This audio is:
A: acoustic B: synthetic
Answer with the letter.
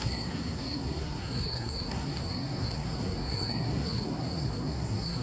B